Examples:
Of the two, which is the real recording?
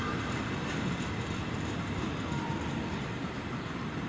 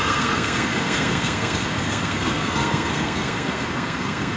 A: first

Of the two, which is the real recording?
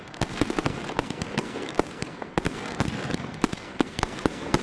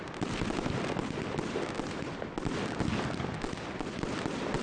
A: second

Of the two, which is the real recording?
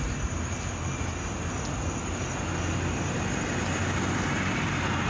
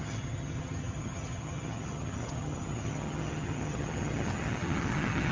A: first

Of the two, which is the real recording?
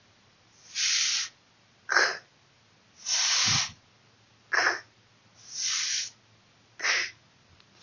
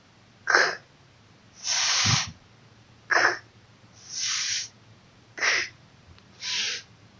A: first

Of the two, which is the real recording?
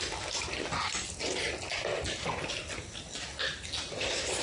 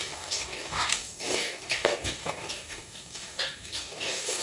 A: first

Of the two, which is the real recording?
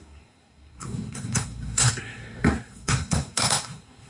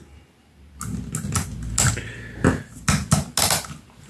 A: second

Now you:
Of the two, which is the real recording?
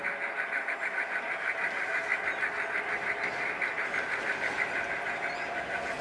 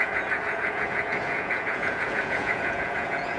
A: first